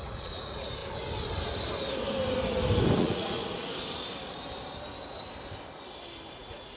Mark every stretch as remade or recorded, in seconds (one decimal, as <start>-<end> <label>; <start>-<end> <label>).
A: 0.0-0.8 remade; 0.8-3.0 recorded; 3.0-3.4 remade; 3.4-6.3 recorded; 6.3-6.8 remade